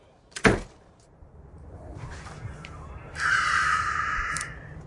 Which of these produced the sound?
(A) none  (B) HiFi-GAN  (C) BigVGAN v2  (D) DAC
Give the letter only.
C